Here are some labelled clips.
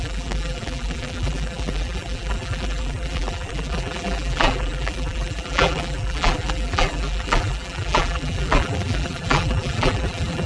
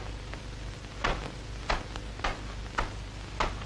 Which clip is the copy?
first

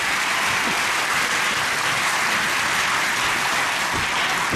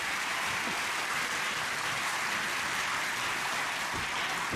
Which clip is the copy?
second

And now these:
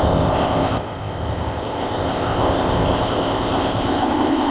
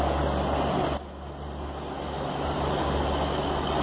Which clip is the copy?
first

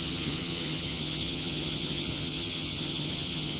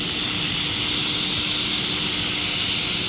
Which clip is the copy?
first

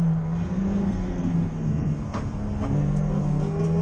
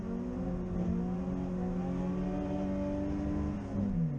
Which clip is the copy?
first